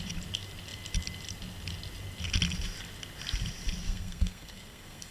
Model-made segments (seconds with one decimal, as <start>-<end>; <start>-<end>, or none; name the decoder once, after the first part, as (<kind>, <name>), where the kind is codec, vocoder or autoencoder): 3.8-5.1 (codec, SNAC)